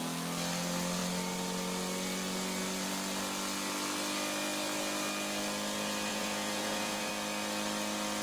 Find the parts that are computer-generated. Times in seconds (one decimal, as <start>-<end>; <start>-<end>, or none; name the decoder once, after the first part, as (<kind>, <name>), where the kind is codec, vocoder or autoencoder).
6.1-7.1 (vocoder, Vocos)